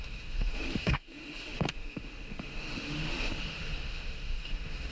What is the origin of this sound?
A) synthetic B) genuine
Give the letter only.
A